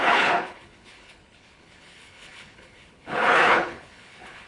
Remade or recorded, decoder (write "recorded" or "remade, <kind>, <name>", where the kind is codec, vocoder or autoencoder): remade, codec, HILCodec